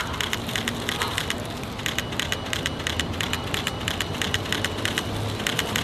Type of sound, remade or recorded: recorded